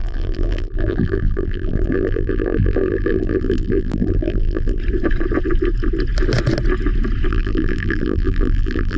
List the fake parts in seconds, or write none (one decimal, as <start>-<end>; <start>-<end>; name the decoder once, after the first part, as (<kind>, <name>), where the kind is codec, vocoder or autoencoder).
0.0-4.8 (vocoder, BigVGAN v2); 7.3-9.0